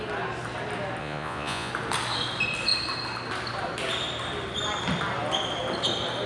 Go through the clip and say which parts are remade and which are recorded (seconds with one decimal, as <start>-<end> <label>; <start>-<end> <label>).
0.0-1.0 recorded; 1.0-1.7 remade; 1.7-6.3 recorded